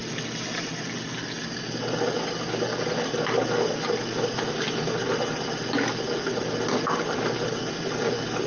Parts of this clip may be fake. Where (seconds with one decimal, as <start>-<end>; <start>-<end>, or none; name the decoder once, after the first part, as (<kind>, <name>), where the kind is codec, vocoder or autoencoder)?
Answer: none